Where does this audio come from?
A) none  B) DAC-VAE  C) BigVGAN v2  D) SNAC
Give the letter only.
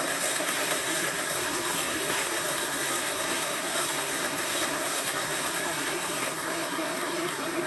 D